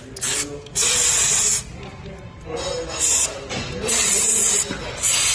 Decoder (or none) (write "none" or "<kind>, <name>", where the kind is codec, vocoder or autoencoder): none